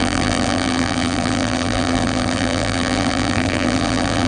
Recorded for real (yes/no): no